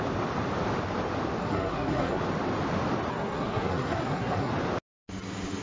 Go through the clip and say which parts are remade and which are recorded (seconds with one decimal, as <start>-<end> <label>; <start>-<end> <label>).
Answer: 0.0-1.4 recorded; 1.4-2.2 remade; 2.2-3.1 recorded; 3.1-4.5 remade; 4.5-5.6 recorded